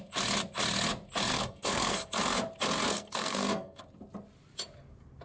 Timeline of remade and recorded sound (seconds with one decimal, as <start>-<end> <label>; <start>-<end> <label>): 0.0-1.3 recorded; 1.3-2.2 remade; 2.2-2.9 recorded; 2.9-3.8 remade; 3.8-5.2 recorded